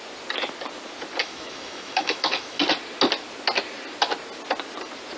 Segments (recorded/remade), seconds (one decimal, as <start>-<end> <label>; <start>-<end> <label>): 0.0-1.2 recorded; 1.2-2.6 remade; 2.6-5.2 recorded